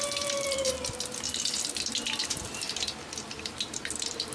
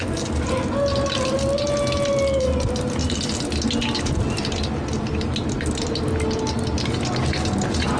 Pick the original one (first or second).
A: second